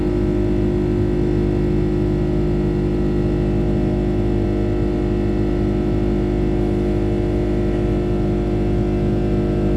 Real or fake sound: real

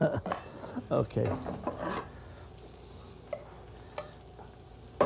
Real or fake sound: real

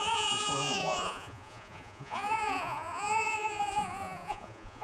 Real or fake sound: fake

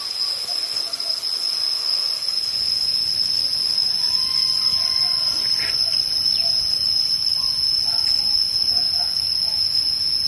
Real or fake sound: fake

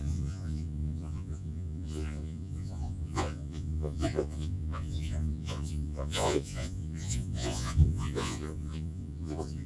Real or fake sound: fake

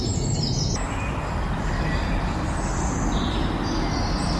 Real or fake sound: real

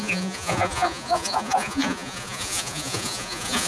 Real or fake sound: fake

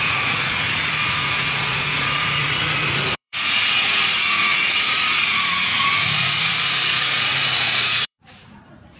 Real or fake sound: fake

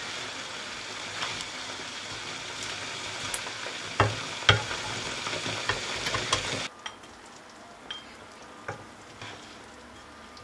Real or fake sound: real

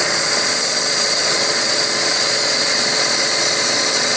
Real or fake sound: fake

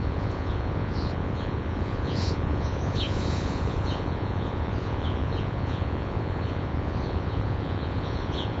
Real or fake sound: fake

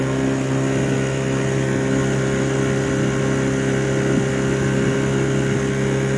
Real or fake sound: real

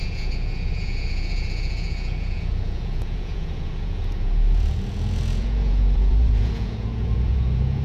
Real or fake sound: fake